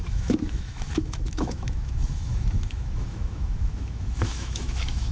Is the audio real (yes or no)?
no